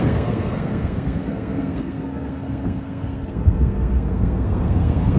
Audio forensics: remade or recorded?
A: remade